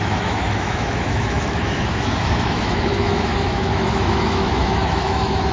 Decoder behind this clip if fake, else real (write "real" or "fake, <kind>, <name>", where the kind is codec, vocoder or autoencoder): fake, autoencoder, DAC-VAE